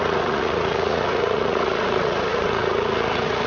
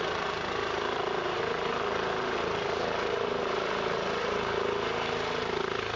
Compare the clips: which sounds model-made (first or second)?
first